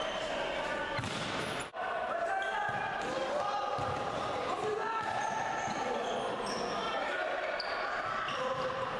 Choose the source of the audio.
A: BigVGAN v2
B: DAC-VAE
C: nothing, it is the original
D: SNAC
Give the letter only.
A